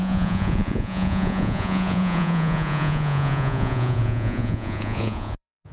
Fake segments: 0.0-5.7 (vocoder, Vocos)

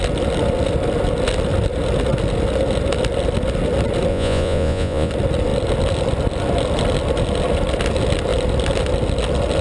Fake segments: 4.1-5.1 (vocoder, Vocos)

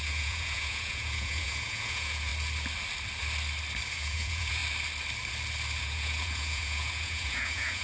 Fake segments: 0.0-2.3 (vocoder, Vocos); 3.9-4.6; 5.8-7.8

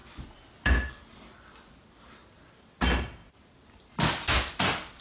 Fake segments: none

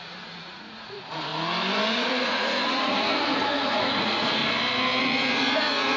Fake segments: 0.0-1.3 (vocoder, Vocos); 1.9-4.4; 5.0-6.0

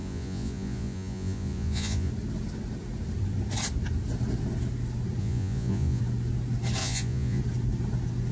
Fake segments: 0.0-2.1 (vocoder, Vocos); 5.2-6.0; 6.8-7.4